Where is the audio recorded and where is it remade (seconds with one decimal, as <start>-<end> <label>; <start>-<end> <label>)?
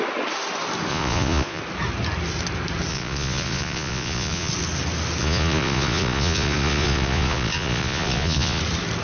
0.0-0.9 recorded; 0.9-1.6 remade; 1.6-2.9 recorded; 2.9-4.5 remade; 4.5-5.2 recorded; 5.2-8.6 remade; 8.6-9.0 recorded